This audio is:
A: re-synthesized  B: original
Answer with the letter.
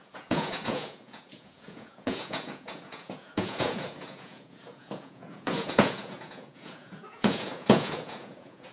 A